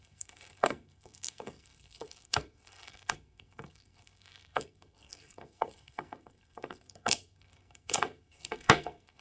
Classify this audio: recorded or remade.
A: remade